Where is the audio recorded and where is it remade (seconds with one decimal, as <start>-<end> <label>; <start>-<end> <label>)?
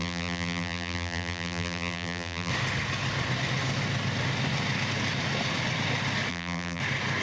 0.0-2.5 remade; 2.5-6.3 recorded; 6.3-6.8 remade; 6.8-7.2 recorded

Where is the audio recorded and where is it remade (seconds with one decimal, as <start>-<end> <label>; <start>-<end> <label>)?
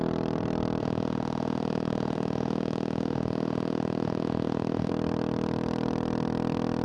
0.0-0.8 recorded; 0.8-4.9 remade; 4.9-6.8 recorded